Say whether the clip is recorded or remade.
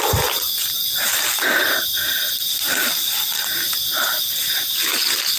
recorded